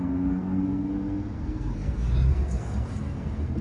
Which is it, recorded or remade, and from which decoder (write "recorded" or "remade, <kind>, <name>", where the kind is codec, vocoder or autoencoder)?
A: remade, codec, SNAC